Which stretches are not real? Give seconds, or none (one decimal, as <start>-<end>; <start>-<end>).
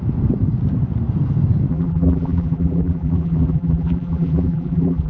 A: 1.7-5.1